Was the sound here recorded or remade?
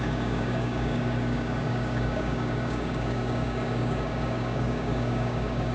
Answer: remade